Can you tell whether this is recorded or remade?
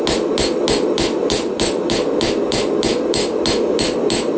recorded